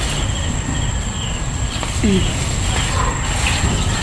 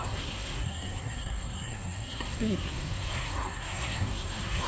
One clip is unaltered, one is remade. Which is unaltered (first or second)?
first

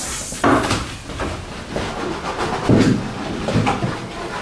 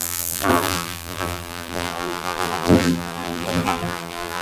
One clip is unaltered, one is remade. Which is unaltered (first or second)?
first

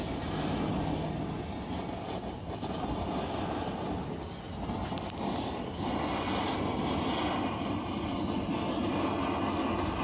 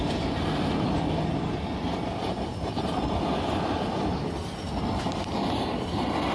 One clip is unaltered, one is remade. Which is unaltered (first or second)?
first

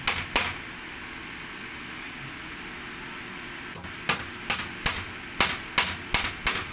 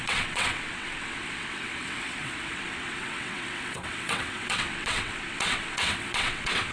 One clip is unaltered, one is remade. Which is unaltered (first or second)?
first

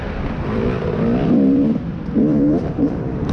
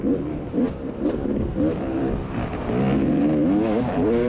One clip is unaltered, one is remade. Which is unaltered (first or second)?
second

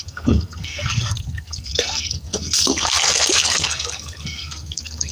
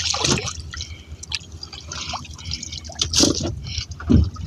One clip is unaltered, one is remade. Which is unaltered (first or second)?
second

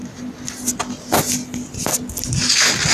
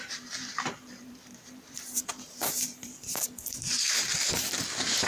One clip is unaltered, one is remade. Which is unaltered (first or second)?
first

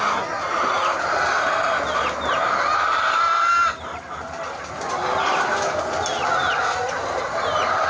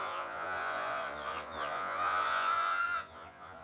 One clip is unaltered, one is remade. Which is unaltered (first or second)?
first